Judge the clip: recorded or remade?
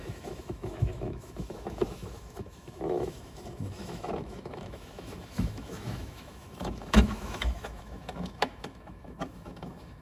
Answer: remade